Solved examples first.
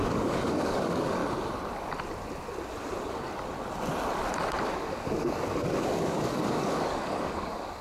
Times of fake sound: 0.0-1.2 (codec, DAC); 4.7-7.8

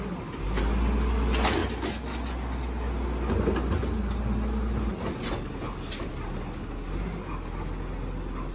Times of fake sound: none